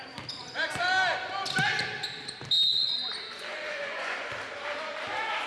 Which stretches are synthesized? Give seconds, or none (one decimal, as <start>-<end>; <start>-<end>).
3.5-4.3